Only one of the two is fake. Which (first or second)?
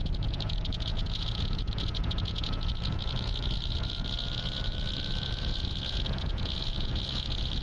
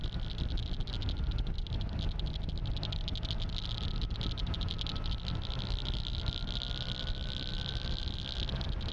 first